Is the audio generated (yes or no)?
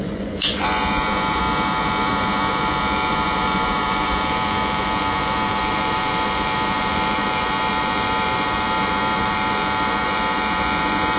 yes